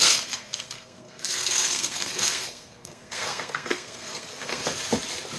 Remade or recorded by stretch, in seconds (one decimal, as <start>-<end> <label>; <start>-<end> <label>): 0.0-4.6 remade; 4.6-5.4 recorded